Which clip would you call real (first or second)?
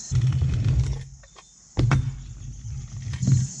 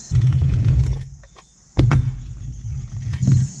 first